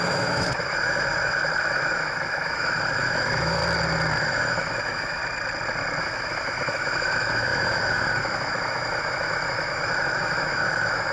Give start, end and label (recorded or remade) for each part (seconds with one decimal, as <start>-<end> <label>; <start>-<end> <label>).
0.0-3.6 remade; 3.6-4.2 recorded; 4.2-5.2 remade; 5.2-6.0 recorded; 6.0-11.1 remade